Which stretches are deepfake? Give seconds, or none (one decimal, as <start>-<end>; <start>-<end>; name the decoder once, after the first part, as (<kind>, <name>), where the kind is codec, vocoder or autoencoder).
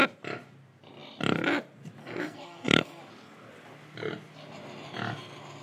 2.0-3.0 (codec, SNAC)